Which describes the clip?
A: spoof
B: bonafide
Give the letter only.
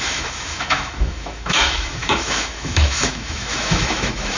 A